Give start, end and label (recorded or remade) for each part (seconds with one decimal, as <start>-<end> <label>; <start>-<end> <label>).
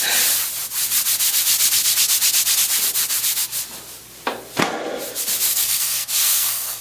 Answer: 0.0-5.5 recorded; 5.5-6.8 remade